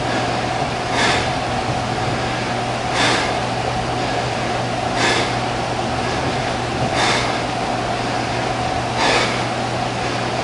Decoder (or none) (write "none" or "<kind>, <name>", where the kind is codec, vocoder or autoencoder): none